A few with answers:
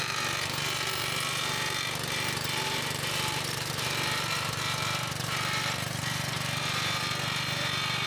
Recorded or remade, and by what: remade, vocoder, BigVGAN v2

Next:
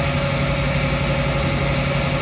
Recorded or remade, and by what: recorded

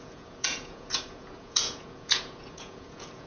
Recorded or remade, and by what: remade, vocoder, Vocos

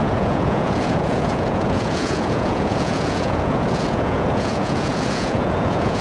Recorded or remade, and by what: remade, vocoder, Vocos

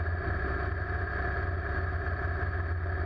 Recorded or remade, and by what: recorded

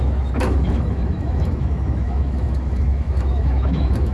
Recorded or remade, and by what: remade, autoencoder, DAC-VAE